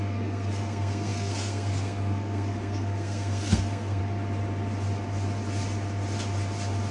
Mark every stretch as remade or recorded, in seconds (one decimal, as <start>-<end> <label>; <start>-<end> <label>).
0.0-4.0 remade; 4.0-6.9 recorded

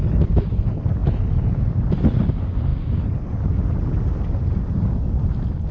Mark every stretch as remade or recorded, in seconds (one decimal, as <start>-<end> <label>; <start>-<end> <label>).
0.0-5.7 recorded

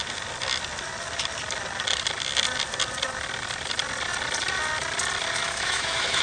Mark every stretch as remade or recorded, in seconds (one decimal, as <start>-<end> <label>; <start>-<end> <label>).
0.0-5.4 recorded; 5.4-6.2 remade

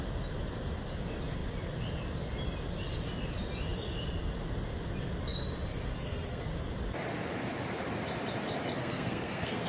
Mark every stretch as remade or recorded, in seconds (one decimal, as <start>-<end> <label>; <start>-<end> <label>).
0.0-5.9 recorded; 5.9-6.5 remade; 6.5-8.8 recorded; 8.8-9.7 remade

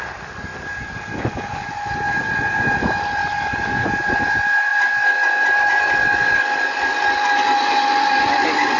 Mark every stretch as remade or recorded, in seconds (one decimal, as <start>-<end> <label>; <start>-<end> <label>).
0.0-8.8 recorded

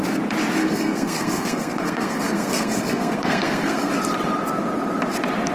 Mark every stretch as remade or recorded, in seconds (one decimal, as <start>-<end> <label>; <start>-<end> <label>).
0.0-0.6 recorded; 0.6-3.9 remade; 3.9-5.5 recorded

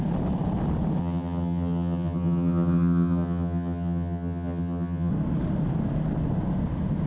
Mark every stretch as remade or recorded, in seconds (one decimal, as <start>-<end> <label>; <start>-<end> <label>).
0.0-1.0 recorded; 1.0-5.1 remade; 5.1-7.1 recorded